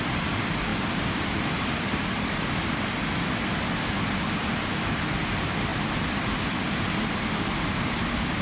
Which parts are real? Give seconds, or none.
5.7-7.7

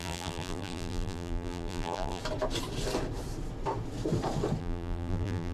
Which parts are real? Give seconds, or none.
2.2-4.6